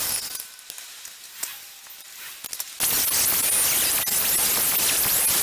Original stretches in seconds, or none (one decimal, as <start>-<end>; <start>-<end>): 0.0-5.4